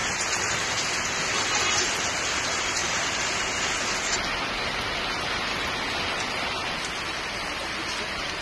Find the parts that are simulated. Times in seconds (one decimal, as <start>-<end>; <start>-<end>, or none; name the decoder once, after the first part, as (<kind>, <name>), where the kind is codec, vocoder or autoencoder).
0.0-2.8 (vocoder, BigVGAN v2); 6.9-8.4